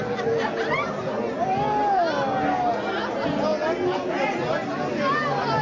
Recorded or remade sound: recorded